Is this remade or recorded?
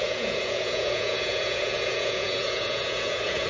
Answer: remade